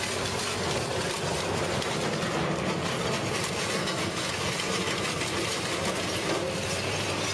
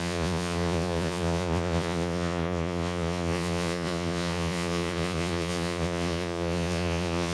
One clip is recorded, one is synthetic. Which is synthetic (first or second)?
second